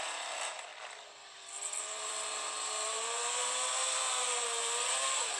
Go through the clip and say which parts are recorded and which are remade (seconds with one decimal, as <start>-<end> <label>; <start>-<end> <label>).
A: 0.0-0.7 remade; 0.7-1.8 recorded; 1.8-5.4 remade